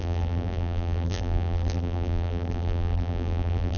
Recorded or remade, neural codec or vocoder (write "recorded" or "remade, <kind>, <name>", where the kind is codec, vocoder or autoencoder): remade, vocoder, BigVGAN v2